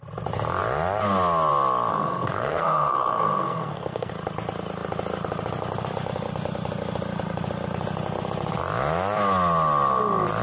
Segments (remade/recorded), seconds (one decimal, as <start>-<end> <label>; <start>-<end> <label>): 0.0-1.9 recorded; 1.9-4.1 remade; 4.1-10.4 recorded